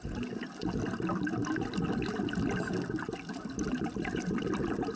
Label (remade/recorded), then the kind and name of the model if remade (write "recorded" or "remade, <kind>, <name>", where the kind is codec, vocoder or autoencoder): recorded